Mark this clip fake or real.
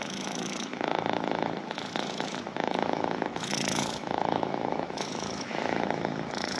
fake